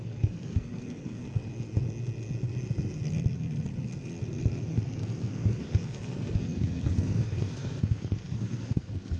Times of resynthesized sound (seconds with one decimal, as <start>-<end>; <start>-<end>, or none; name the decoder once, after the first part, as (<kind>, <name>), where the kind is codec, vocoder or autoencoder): 0.0-1.2 (codec, SNAC); 4.7-9.2